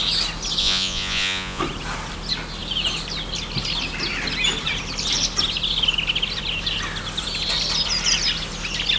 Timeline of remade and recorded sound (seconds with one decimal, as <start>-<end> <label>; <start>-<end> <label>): 0.0-0.6 recorded; 0.6-1.6 remade; 1.6-9.0 recorded